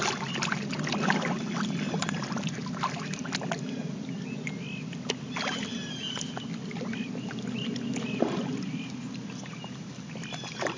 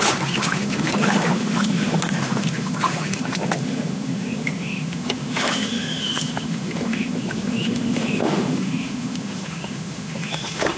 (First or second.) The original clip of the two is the first